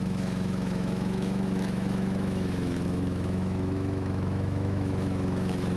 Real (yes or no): no